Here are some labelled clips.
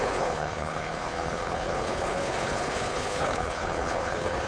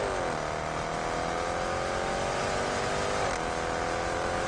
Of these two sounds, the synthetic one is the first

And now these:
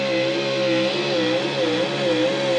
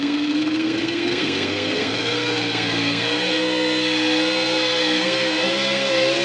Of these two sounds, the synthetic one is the second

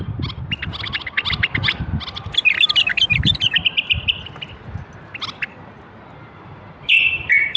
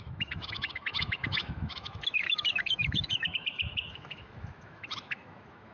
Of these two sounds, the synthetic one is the second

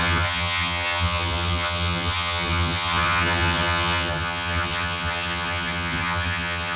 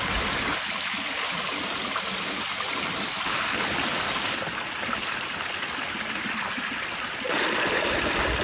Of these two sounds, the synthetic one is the first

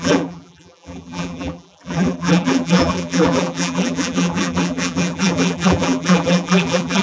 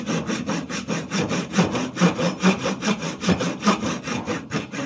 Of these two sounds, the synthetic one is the first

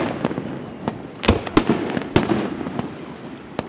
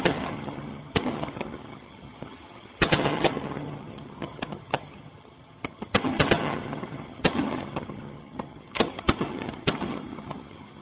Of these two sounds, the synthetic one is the second